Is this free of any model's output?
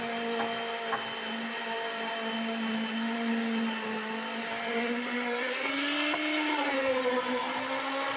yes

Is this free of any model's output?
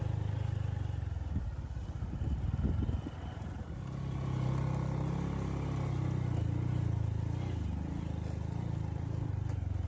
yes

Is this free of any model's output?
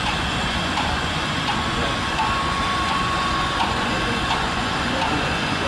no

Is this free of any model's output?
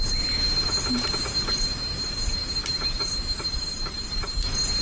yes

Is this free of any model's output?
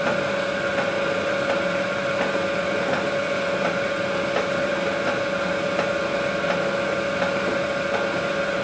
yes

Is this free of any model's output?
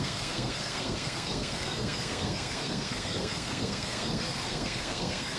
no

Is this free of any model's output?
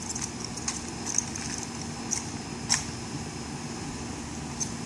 yes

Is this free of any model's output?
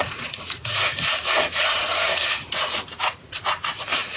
no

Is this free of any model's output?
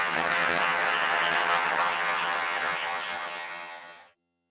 no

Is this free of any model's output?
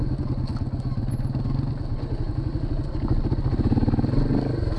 yes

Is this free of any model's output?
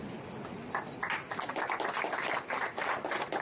yes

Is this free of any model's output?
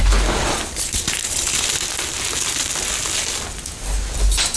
yes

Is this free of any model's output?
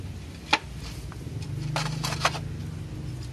yes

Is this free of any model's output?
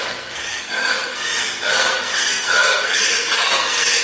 no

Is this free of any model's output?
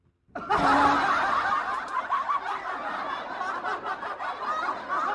yes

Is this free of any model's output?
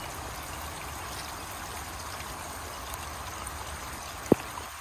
yes